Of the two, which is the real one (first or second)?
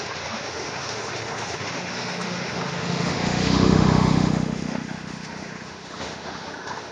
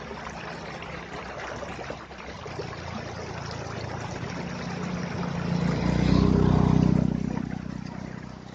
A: second